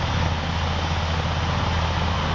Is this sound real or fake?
real